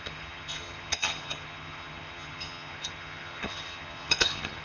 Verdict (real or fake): fake